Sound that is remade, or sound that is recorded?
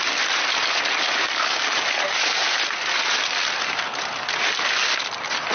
recorded